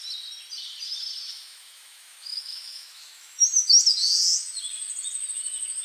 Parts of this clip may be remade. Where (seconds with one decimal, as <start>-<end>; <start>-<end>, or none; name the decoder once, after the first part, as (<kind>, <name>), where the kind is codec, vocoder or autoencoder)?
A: 1.3-3.4 (autoencoder, DAC-VAE)